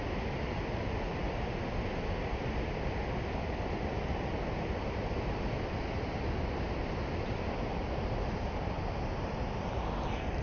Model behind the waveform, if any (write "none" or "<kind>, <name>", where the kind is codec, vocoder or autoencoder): none